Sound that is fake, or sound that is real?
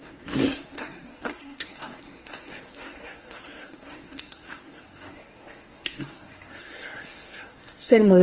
fake